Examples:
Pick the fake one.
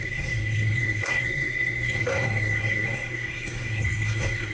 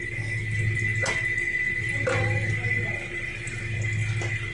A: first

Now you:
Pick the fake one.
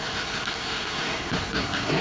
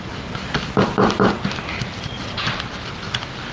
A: first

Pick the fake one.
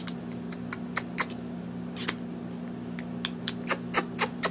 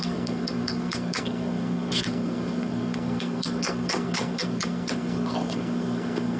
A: second